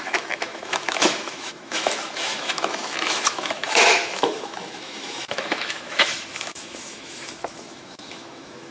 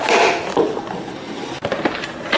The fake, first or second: first